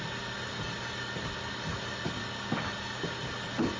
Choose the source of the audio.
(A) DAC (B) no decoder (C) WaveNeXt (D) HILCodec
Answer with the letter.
B